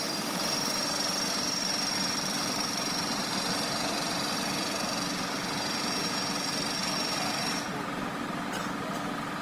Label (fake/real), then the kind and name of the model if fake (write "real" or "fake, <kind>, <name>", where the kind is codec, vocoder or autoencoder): real